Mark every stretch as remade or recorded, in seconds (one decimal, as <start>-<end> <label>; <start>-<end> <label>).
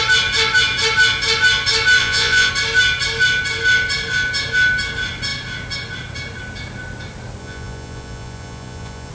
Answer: 0.0-2.0 recorded; 2.0-2.5 remade; 2.5-7.4 recorded; 7.4-9.1 remade